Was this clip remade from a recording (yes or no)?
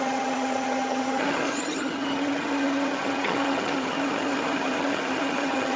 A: yes